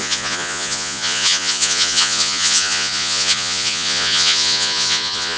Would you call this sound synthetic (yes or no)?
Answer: yes